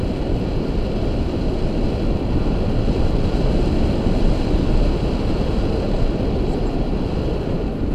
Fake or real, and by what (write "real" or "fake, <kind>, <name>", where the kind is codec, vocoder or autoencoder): fake, vocoder, BigVGAN v2